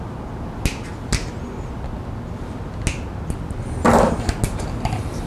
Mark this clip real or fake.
real